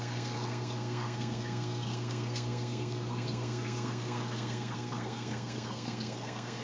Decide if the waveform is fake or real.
fake